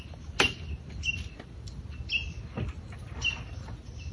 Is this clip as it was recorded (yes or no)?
yes